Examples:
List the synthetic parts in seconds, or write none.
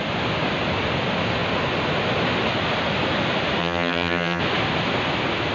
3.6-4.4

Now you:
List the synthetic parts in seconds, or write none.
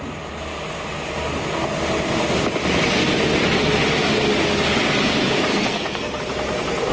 5.5-6.2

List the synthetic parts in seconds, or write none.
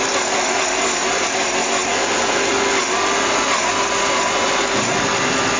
none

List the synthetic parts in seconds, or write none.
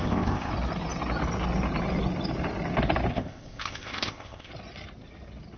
0.0-0.5; 3.1-4.5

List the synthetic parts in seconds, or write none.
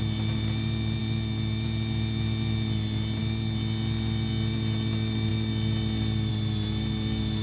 none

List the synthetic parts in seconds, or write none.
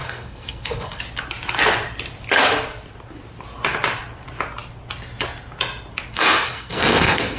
0.0-1.0; 6.1-7.4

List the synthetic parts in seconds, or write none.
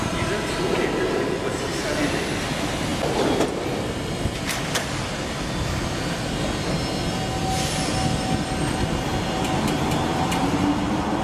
none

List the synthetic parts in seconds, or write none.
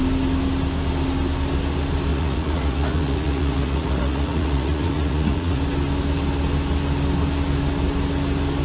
2.1-5.6